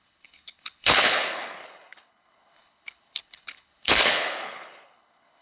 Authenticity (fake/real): fake